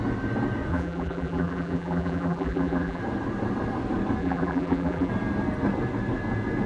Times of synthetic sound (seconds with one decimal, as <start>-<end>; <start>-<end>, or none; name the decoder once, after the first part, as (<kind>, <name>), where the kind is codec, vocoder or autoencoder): 0.7-3.0 (vocoder, BigVGAN v2); 4.2-5.1